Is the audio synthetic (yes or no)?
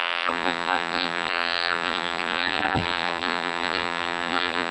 yes